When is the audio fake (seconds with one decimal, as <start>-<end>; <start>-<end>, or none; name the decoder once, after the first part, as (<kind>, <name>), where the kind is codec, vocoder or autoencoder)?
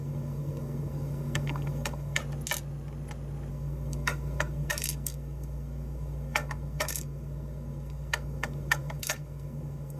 0.0-2.2 (codec, SNAC); 3.5-10.0